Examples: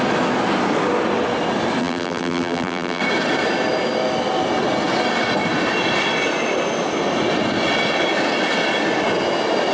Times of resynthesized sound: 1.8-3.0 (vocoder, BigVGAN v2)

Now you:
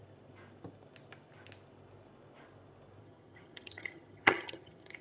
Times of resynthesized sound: 3.0-5.0 (vocoder, HiFi-GAN)

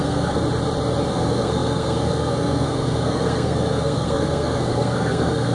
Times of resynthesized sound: 0.0-0.4 (codec, SNAC); 1.1-5.5

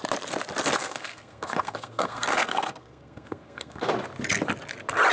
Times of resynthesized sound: 0.8-3.9 (codec, SNAC)

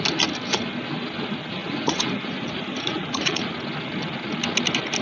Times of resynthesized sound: 1.6-3.5 (vocoder, Vocos)

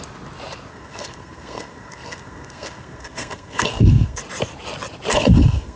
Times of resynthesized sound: 0.7-4.2 (codec, SNAC); 5.1-5.8

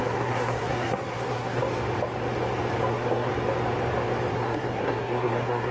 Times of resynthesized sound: 0.0-1.6 (codec, SNAC); 2.9-3.3; 4.3-5.7

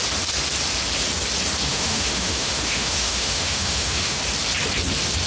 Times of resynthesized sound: 1.7-4.2 (autoencoder, DAC-VAE)